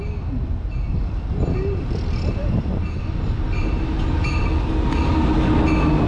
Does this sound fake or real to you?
real